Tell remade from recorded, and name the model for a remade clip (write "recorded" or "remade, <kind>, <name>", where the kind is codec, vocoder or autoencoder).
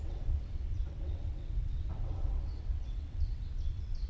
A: remade, vocoder, WaveNeXt